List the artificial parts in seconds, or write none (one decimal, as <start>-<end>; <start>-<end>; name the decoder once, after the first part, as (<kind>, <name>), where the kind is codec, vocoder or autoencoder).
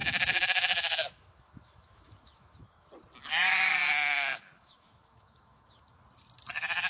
0.0-2.9 (autoencoder, DAC-VAE); 4.3-6.0